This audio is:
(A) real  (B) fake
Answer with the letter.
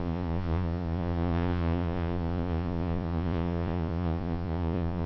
B